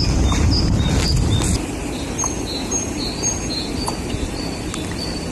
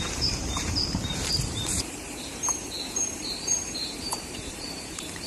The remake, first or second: second